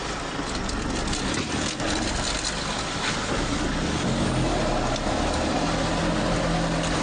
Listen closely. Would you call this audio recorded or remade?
recorded